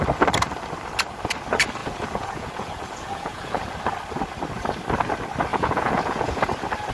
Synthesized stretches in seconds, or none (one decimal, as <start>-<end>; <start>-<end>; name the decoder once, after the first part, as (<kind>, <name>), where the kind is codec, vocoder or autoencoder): 1.8-3.6 (vocoder, Vocos); 5.5-6.4